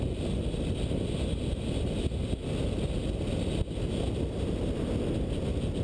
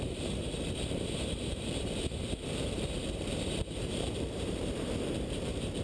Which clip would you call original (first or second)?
first